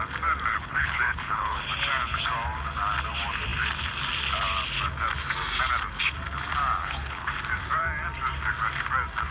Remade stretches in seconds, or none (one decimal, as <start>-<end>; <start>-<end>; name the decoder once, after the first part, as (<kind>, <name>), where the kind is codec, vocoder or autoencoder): 0.5-1.6 (codec, HILCodec); 6.8-7.3